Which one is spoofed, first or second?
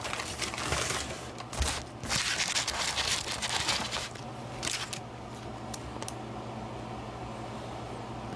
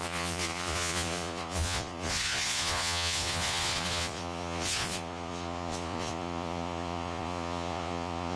second